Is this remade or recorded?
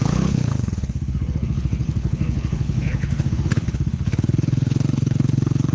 remade